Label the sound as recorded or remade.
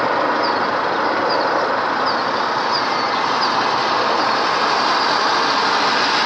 recorded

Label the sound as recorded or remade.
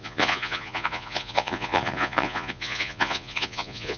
remade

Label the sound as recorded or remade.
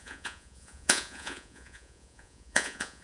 remade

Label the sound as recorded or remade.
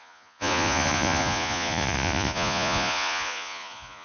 remade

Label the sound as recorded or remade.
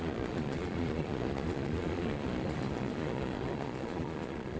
remade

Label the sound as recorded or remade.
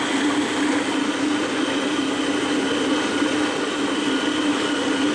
recorded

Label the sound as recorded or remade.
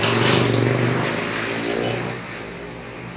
recorded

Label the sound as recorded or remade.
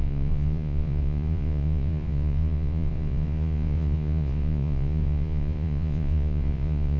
remade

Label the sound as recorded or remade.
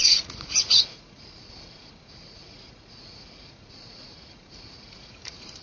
remade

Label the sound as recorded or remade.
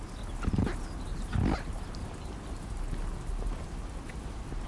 recorded